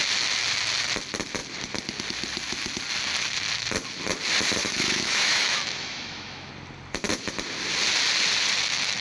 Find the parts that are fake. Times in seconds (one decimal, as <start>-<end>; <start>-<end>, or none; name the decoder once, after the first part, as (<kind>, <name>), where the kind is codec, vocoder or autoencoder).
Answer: 4.6-6.5 (autoencoder, DAC-VAE)